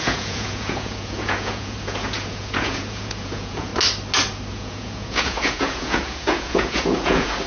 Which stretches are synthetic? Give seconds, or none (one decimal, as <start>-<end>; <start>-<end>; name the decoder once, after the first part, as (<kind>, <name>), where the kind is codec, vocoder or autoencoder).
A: 0.0-3.7 (vocoder, Vocos); 4.5-7.5